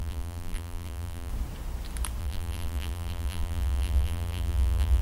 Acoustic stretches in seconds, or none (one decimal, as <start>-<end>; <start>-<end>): 1.3-2.2